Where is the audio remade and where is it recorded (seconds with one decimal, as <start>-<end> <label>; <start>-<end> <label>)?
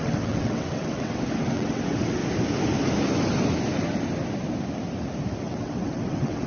0.0-2.2 remade; 2.2-5.4 recorded; 5.4-6.5 remade